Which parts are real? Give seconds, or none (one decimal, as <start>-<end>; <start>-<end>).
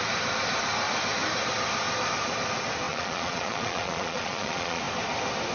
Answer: 0.0-2.9; 4.8-5.5